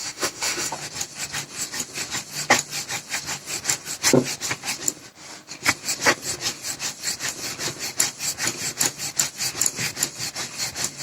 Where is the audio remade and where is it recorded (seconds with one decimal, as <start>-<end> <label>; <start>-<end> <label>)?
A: 0.0-0.7 remade; 0.7-11.0 recorded